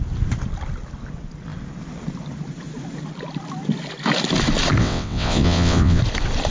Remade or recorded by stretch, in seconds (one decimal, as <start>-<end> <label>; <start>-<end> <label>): 0.0-4.8 recorded; 4.8-6.0 remade; 6.0-6.5 recorded